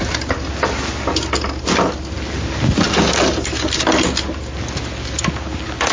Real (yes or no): yes